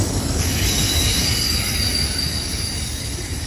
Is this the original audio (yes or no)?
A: no